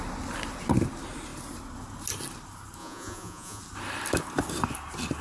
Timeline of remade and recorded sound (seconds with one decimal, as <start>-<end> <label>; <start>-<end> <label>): 0.0-2.8 recorded; 2.8-3.6 remade; 3.6-5.2 recorded